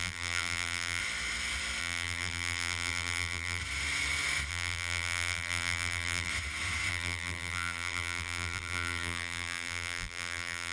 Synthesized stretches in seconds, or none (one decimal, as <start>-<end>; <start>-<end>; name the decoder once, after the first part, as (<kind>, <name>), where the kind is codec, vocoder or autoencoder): 0.0-1.0 (vocoder, BigVGAN v2); 1.8-3.6; 4.5-6.3; 6.9-10.7